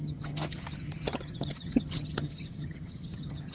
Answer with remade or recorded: remade